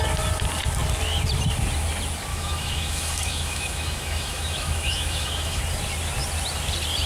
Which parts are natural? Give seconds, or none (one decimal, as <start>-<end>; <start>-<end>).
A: 0.0-2.3; 5.6-7.1